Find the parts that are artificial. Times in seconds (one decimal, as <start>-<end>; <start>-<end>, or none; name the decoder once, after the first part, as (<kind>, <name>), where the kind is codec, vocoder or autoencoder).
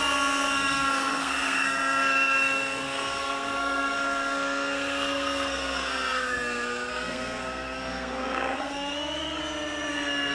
0.0-9.4 (codec, SNAC); 9.9-10.3